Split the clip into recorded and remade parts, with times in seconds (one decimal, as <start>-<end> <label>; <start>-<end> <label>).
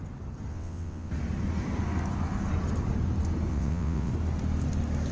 0.0-0.5 recorded; 0.5-1.1 remade; 1.1-3.5 recorded; 3.5-4.1 remade; 4.1-5.1 recorded